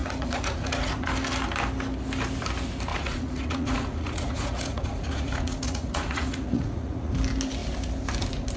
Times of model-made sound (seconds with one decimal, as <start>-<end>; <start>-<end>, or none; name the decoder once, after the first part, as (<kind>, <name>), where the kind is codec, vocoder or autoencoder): 0.0-1.1 (vocoder, Vocos); 2.9-7.1